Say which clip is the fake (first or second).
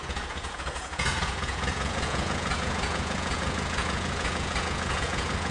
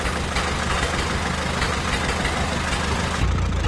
first